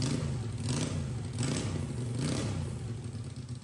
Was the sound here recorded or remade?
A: recorded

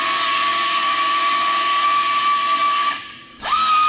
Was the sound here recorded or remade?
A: remade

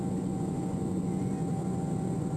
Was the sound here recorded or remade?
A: remade